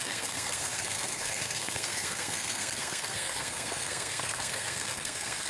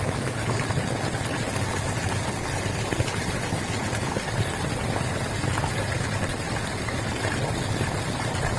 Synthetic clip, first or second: first